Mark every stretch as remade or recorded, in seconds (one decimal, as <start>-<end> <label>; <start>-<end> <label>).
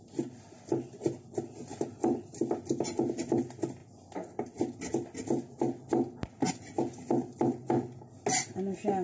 0.0-9.0 recorded